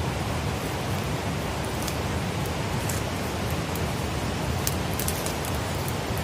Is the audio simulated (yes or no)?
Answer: no